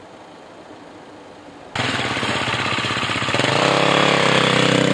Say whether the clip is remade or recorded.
recorded